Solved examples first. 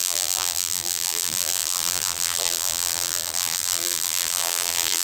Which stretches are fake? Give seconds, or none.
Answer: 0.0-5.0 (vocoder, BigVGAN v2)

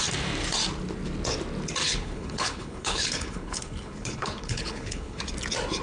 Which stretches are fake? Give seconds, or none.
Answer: 1.8-5.2 (codec, HILCodec)

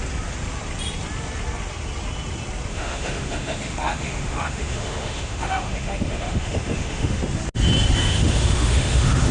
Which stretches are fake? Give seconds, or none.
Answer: 2.7-7.2 (autoencoder, DAC-VAE); 8.0-9.3

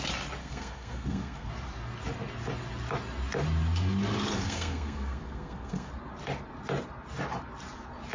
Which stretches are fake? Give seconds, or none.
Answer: 0.4-1.5 (codec, SNAC); 4.3-5.9